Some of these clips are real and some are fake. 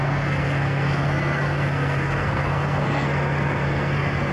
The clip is fake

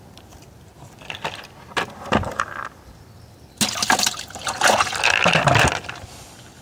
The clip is real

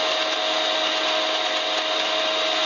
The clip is real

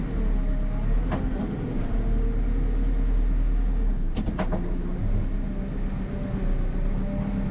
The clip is real